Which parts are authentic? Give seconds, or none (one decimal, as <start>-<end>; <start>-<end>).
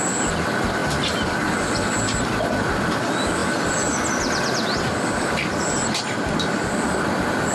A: 0.0-7.5